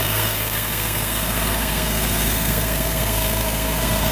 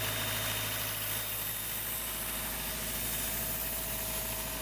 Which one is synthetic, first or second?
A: first